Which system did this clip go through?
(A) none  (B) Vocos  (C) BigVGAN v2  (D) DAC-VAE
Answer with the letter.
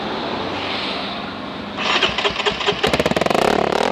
A